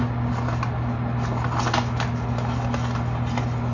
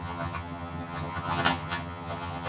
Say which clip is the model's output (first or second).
second